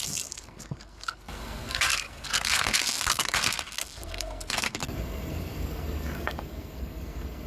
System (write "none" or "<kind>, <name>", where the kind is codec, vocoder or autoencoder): codec, SNAC